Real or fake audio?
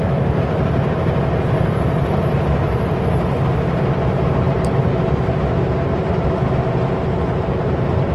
real